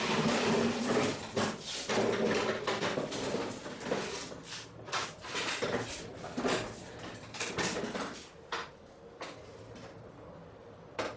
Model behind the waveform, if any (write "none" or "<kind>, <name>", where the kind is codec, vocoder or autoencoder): none